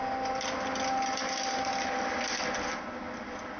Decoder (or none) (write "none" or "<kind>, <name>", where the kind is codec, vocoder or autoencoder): none